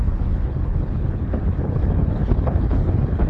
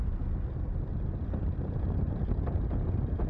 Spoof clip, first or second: first